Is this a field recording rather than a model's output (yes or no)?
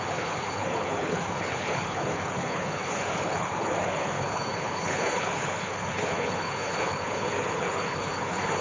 no